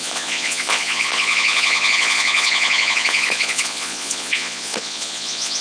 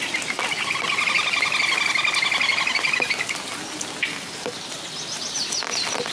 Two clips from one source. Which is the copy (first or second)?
first